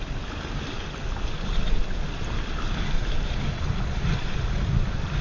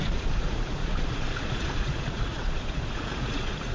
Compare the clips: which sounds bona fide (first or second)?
first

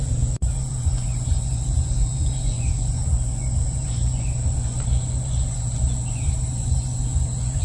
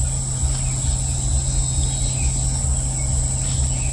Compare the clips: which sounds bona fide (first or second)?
second